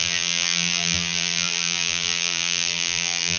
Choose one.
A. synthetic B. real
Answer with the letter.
A